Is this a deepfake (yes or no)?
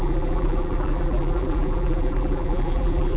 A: yes